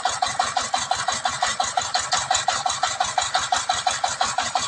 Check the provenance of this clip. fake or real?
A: real